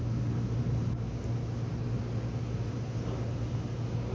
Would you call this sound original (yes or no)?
yes